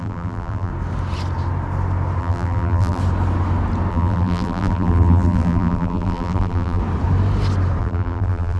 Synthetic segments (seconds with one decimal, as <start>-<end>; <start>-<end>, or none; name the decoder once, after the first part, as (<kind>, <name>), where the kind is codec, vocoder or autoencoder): 0.0-0.7 (vocoder, BigVGAN v2); 2.2-3.0; 3.9-6.8; 7.8-8.6